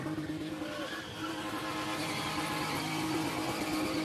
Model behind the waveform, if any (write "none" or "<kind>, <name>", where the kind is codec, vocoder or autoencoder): vocoder, BigVGAN v2